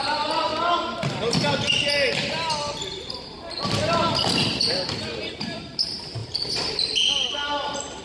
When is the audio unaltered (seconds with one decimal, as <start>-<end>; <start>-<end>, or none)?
0.5-3.0; 6.2-8.0